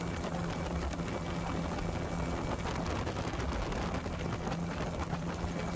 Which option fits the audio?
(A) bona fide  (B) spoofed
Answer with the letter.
A